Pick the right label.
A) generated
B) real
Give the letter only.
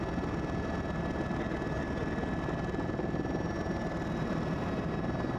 B